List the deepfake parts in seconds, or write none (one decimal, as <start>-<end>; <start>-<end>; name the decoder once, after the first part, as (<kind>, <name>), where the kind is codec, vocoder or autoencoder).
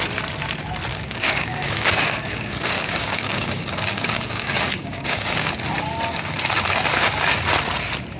0.9-5.5 (codec, DAC)